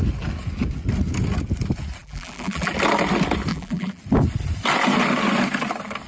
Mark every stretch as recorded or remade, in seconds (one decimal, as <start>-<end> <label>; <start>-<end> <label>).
0.0-2.0 recorded; 2.0-2.7 remade; 2.7-3.5 recorded; 3.5-4.0 remade; 4.0-6.1 recorded